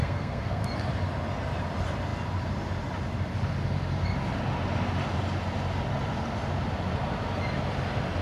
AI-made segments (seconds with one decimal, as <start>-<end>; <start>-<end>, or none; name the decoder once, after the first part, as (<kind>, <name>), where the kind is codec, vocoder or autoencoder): 0.0-0.6 (codec, SNAC)